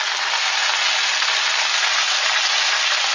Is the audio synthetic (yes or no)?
no